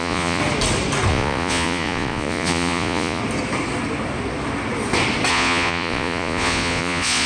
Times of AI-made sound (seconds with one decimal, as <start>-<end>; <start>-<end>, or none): 0.0-0.4; 1.1-3.2; 5.3-7.3